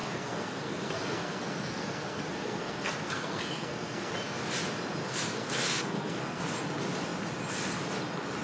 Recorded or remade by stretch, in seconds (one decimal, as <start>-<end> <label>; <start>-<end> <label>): 0.0-4.1 remade; 4.1-5.0 recorded; 5.0-6.5 remade; 6.5-8.4 recorded